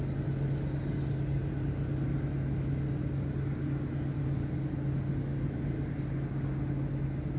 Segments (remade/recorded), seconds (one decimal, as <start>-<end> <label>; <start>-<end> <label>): 0.0-5.3 recorded; 5.3-6.0 remade; 6.0-7.4 recorded